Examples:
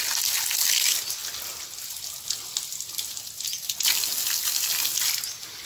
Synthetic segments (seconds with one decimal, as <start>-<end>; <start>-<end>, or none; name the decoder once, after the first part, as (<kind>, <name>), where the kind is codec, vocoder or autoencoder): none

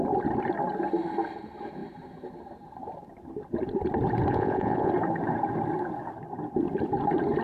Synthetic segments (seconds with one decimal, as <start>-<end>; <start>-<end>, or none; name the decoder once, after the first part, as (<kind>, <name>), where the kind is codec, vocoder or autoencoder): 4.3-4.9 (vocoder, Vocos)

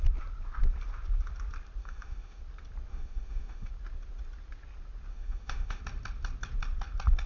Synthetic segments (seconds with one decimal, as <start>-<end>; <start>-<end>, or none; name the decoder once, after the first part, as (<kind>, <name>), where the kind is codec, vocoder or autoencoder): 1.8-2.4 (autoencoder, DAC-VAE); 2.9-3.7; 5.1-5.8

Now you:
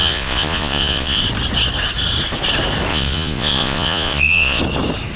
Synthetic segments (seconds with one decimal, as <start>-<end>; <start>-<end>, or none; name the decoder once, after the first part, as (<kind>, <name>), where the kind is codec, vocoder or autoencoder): 0.0-1.2 (vocoder, Vocos); 2.9-4.6

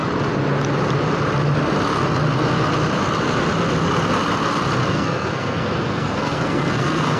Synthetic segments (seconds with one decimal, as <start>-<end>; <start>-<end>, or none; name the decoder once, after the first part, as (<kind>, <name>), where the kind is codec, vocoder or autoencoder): 4.9-7.2 (codec, SNAC)

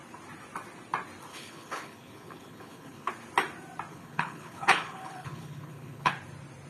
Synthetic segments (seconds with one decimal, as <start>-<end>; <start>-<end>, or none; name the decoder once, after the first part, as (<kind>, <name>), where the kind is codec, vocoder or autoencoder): 1.3-3.1 (codec, HILCodec); 3.9-6.1

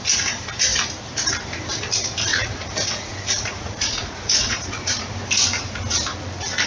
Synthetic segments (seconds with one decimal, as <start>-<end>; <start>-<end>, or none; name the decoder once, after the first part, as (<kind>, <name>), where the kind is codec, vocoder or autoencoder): 2.3-5.0 (vocoder, Vocos)

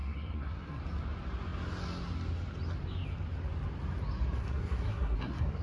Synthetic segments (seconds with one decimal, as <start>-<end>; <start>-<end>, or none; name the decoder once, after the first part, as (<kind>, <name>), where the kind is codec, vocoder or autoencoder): 0.0-0.8 (codec, SNAC); 4.4-5.6